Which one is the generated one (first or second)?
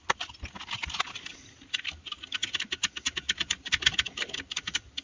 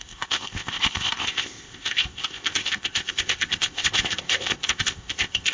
second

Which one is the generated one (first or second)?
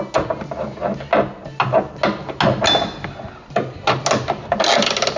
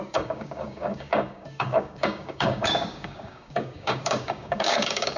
second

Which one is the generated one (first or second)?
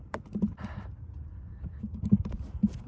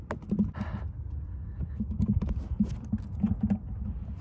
first